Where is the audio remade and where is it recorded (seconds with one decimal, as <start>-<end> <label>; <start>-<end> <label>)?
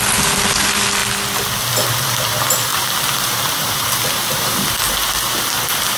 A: 0.0-2.7 recorded; 2.7-4.9 remade; 4.9-6.0 recorded